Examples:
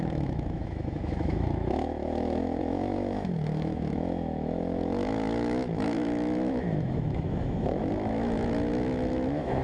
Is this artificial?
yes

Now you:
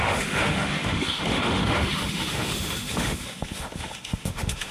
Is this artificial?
yes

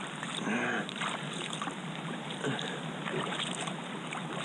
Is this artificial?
no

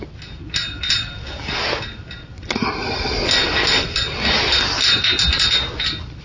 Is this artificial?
no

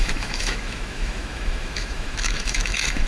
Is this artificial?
yes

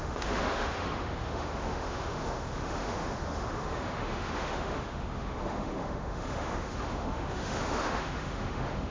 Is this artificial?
yes